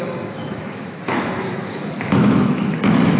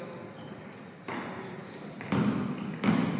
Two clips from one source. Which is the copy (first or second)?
first